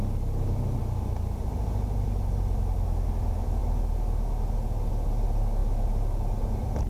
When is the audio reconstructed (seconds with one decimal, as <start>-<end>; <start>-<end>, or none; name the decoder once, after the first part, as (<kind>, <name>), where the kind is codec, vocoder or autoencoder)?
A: none